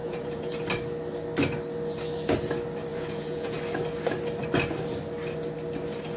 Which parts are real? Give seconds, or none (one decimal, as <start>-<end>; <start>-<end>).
0.6-2.9; 3.6-6.2